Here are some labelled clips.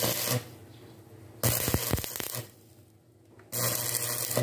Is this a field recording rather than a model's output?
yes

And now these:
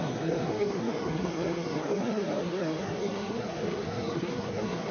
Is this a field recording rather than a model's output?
no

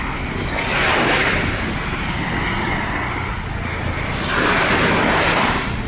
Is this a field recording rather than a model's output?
yes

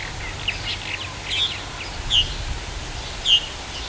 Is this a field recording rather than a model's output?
yes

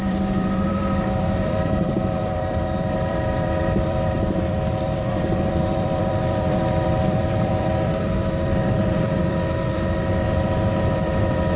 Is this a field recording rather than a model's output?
no